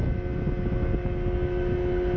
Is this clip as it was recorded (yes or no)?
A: yes